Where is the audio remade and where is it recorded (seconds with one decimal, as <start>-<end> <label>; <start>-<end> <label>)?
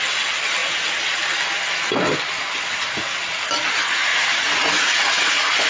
0.0-4.1 recorded; 4.1-5.7 remade